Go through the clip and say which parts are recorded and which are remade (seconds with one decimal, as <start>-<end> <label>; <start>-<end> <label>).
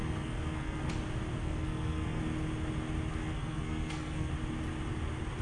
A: 0.0-0.9 remade; 0.9-1.4 recorded; 1.4-2.2 remade; 2.2-3.2 recorded; 3.2-4.3 remade; 4.3-5.4 recorded